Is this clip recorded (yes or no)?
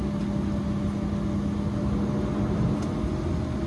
yes